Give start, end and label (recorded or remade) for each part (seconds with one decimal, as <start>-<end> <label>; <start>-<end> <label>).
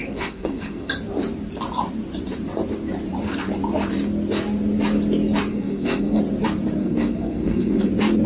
0.0-0.9 remade; 0.9-5.5 recorded; 5.5-6.2 remade; 6.2-6.8 recorded; 6.8-7.9 remade; 7.9-8.3 recorded